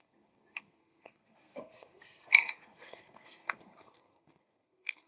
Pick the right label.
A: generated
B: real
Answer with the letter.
A